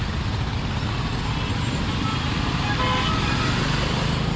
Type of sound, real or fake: real